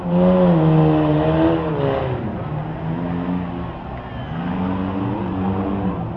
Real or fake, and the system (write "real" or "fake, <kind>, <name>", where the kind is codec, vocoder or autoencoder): real